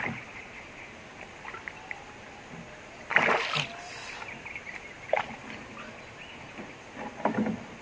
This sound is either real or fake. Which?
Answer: real